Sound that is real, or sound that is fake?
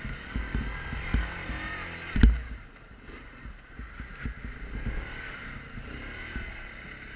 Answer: real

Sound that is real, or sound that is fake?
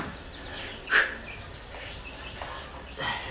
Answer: real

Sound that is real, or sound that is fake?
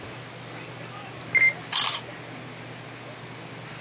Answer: real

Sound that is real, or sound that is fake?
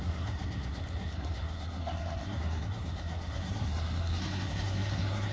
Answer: fake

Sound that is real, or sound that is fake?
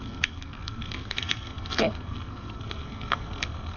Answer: fake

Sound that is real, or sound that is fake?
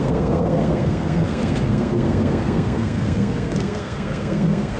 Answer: fake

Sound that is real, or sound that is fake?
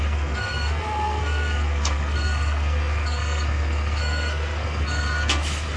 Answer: fake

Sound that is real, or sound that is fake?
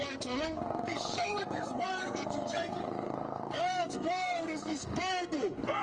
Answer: fake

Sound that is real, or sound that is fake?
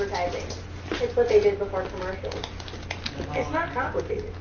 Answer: real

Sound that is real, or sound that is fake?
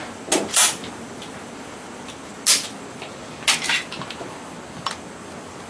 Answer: real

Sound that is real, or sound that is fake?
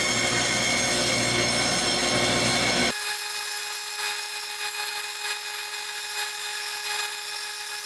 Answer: real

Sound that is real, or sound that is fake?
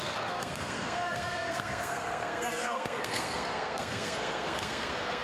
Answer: fake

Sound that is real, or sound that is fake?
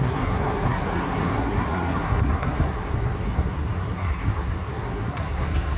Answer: fake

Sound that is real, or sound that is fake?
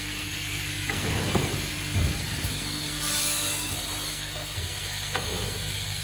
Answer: fake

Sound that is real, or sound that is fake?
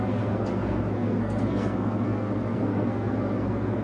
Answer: fake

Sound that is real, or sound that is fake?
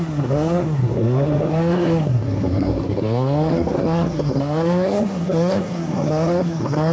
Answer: fake